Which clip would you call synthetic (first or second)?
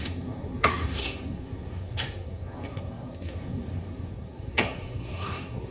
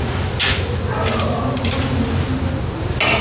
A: first